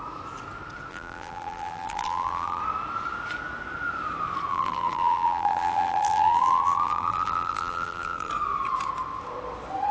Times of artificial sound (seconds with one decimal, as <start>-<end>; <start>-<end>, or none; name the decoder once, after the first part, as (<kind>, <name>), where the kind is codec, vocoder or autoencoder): 0.9-2.6 (vocoder, BigVGAN v2); 4.5-8.3